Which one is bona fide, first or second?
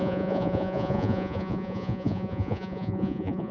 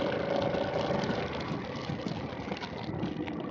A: second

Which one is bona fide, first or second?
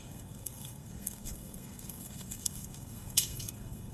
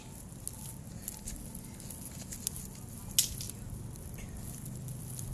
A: second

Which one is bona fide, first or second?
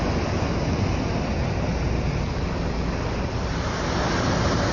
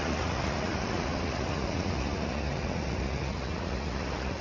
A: first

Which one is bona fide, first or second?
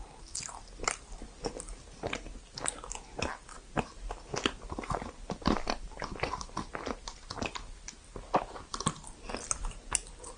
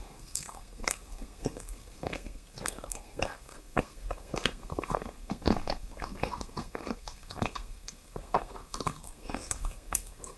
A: first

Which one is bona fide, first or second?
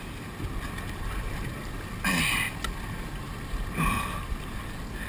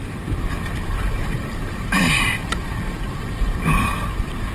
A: first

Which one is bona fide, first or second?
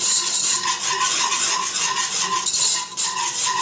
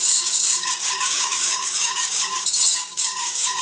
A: first